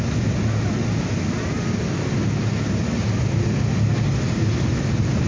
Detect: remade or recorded recorded